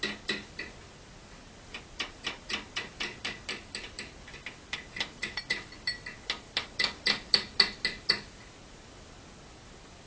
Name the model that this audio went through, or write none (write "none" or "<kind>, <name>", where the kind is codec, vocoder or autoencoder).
none